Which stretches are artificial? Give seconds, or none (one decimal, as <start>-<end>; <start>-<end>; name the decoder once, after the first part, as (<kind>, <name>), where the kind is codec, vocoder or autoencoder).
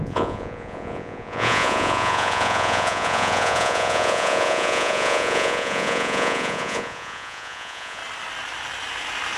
0.0-8.0 (vocoder, Vocos)